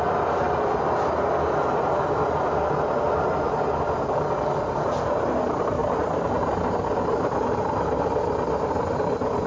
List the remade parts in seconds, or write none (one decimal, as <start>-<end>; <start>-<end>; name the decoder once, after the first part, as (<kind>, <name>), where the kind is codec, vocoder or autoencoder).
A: none